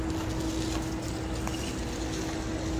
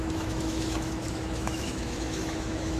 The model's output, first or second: second